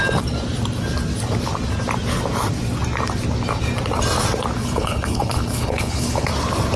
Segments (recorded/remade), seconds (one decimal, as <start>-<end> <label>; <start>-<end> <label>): 0.0-4.6 recorded; 4.6-6.3 remade; 6.3-6.8 recorded